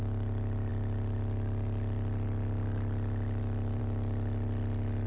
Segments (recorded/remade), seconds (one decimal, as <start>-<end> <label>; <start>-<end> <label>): 0.0-5.1 recorded